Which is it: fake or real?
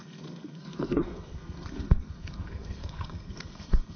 fake